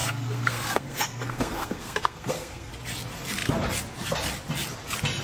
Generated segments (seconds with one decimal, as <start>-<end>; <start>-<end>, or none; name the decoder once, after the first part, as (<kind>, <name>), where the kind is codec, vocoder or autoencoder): 0.0-2.7 (codec, SNAC)